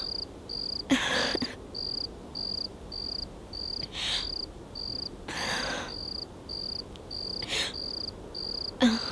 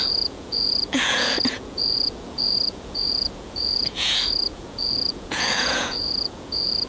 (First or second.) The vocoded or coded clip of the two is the second